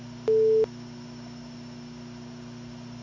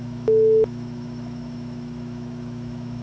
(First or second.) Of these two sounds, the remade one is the second